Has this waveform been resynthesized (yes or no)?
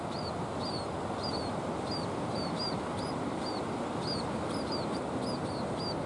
no